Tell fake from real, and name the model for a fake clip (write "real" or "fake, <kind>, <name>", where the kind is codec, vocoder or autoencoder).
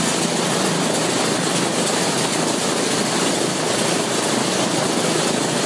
real